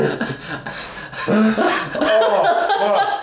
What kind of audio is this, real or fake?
real